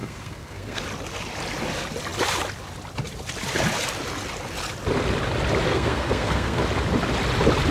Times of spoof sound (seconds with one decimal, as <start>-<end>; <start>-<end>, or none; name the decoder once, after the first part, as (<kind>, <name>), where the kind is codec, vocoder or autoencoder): 0.0-0.8 (codec, SNAC); 5.7-6.6